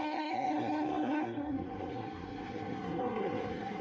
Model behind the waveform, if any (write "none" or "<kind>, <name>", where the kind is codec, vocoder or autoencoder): codec, SNAC